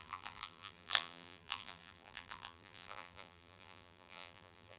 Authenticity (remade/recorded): remade